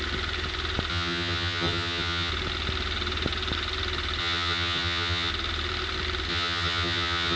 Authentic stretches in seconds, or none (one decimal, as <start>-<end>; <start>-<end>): 0.0-0.9; 2.3-4.2; 5.3-6.3